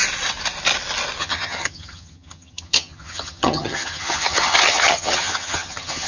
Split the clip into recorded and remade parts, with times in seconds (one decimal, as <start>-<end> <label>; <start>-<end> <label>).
0.0-1.2 recorded; 1.2-6.1 remade